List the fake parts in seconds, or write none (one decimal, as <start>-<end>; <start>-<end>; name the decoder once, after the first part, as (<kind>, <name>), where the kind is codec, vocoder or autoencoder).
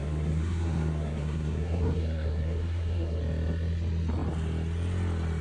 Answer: 0.0-3.2 (codec, SNAC)